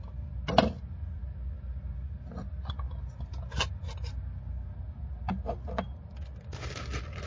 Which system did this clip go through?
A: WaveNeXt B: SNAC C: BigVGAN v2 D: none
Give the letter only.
D